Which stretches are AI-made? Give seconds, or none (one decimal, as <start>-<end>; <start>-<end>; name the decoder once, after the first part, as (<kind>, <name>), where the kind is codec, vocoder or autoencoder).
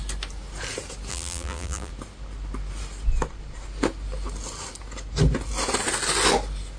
1.1-1.9 (vocoder, BigVGAN v2)